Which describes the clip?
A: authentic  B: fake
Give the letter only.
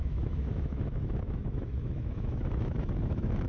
B